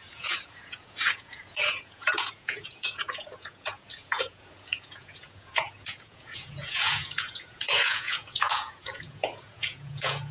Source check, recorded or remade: remade